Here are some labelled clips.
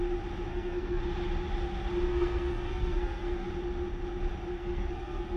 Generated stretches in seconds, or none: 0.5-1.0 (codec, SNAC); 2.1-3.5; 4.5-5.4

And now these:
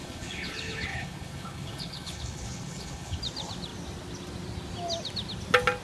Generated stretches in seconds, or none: 0.0-3.2 (codec, HILCodec)

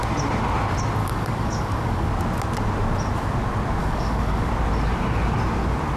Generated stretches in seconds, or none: 1.0-2.1 (codec, DAC); 3.8-4.5

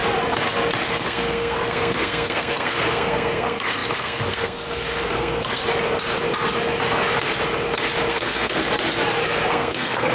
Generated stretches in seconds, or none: 0.9-5.6 (codec, SNAC); 8.1-8.6; 9.5-10.1

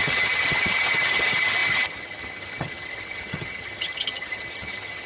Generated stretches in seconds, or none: 0.0-5.1 (vocoder, HiFi-GAN)

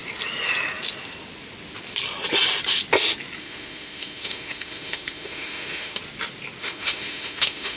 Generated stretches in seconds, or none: 3.4-6.0 (autoencoder, DAC-VAE); 6.6-7.8

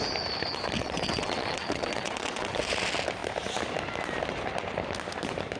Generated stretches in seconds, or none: 0.8-2.6 (vocoder, WaveNeXt)

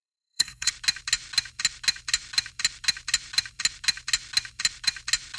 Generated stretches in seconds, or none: 0.0-0.7 (codec, SNAC)